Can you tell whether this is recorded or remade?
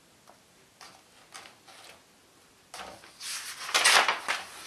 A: recorded